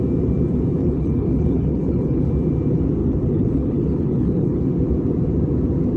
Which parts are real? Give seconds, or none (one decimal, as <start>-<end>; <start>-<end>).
0.0-0.8; 2.3-3.0; 4.6-6.0